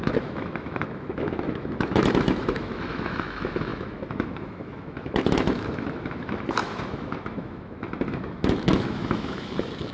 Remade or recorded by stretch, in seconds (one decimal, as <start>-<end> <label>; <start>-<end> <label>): 0.0-9.9 remade